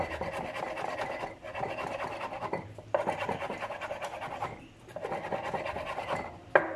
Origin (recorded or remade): recorded